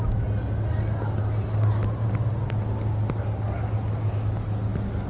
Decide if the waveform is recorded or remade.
recorded